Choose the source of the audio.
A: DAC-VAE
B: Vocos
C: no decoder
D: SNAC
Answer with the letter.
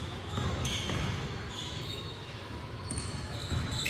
A